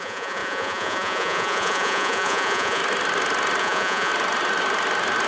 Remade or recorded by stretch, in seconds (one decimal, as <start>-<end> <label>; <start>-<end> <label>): 0.0-2.8 remade; 2.8-3.6 recorded; 3.6-4.1 remade; 4.1-5.3 recorded